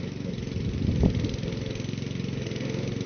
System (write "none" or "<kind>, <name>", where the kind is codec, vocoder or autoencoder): none